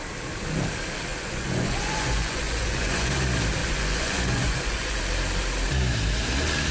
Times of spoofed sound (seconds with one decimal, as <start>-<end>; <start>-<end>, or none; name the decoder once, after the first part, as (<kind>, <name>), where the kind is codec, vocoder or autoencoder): 1.1-3.1 (vocoder, Vocos); 3.6-5.0